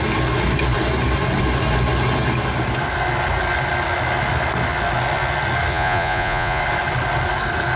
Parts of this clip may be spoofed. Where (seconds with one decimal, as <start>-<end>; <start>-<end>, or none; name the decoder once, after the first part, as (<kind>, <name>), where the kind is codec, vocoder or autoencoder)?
5.7-6.6 (vocoder, Vocos)

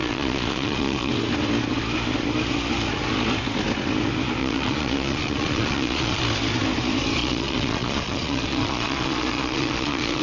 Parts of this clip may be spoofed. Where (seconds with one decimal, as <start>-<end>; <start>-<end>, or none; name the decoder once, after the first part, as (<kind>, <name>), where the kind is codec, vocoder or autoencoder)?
0.0-1.1 (vocoder, Vocos); 4.4-6.2; 7.2-10.2

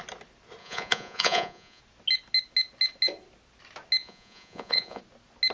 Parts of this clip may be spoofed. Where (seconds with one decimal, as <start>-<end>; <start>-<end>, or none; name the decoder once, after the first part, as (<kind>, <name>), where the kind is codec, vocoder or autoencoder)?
0.6-1.8 (vocoder, Vocos); 4.0-5.0

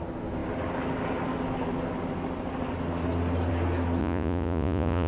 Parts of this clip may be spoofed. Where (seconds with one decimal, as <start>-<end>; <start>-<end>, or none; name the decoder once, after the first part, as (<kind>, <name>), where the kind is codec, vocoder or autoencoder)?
4.0-5.1 (vocoder, Vocos)

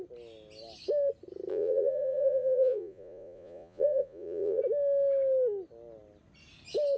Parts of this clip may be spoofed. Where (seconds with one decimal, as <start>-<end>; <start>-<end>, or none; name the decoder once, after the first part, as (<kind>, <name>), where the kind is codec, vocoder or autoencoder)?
1.5-4.6 (vocoder, Vocos)

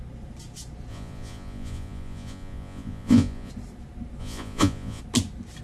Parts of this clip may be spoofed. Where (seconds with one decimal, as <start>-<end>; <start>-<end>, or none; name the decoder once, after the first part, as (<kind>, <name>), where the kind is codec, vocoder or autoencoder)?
0.9-3.5 (vocoder, Vocos); 4.2-5.0